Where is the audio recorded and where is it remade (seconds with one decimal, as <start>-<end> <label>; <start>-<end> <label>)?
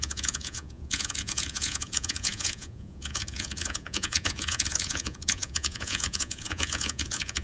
0.0-7.4 remade